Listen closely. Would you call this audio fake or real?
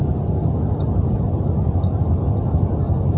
real